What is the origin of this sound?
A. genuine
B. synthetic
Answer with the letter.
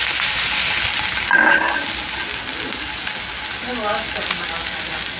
A